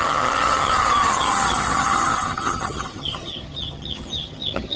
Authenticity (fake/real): fake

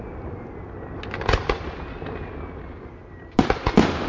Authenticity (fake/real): real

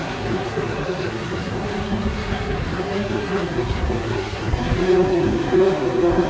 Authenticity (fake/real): fake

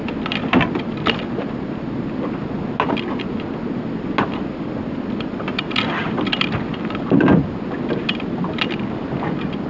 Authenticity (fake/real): real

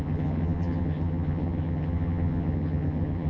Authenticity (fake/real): fake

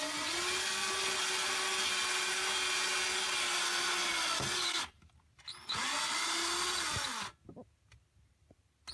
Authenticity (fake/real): real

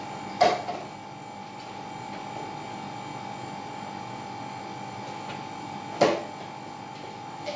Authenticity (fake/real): real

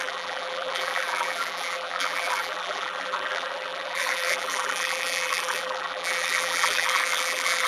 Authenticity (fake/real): fake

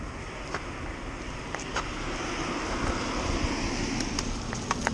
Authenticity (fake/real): real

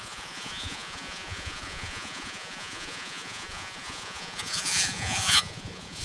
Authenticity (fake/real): fake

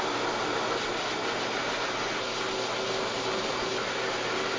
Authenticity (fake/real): real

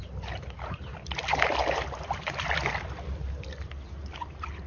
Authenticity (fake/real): real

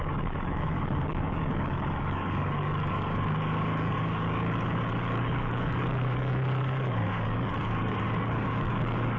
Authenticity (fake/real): fake